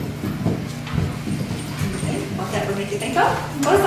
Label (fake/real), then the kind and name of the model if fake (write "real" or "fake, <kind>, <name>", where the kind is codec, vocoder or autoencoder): real